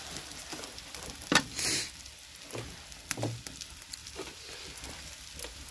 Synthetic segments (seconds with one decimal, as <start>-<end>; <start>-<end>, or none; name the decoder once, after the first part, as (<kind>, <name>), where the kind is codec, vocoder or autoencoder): 0.5-2.1 (vocoder, BigVGAN v2); 4.0-4.5